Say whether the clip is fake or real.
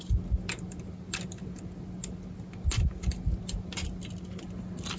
real